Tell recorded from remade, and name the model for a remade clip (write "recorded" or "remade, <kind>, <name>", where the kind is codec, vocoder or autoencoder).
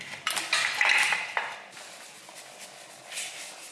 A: recorded